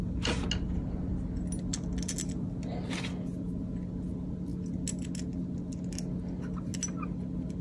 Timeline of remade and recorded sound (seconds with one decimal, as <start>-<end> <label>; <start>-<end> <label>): 0.0-7.6 recorded